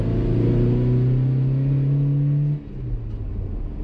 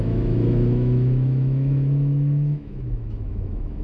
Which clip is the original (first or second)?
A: first